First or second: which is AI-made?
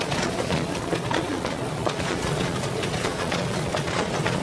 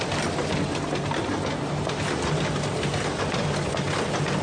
first